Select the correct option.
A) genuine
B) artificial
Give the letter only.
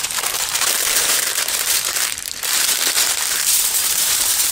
B